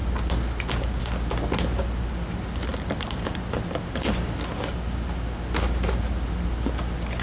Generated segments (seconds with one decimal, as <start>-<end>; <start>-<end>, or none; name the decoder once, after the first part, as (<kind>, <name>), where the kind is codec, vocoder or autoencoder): 2.7-3.4 (vocoder, BigVGAN v2)